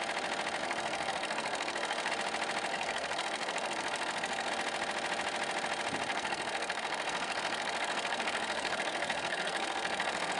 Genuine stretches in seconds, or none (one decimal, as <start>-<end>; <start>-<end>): 0.0-0.6; 2.1-2.7; 4.5-6.1